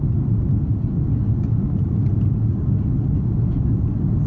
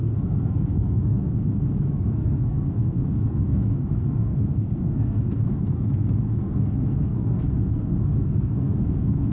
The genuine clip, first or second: first